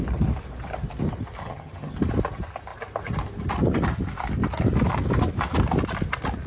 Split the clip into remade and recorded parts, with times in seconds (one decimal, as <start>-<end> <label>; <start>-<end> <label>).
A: 0.0-1.4 recorded; 1.4-1.9 remade; 1.9-6.5 recorded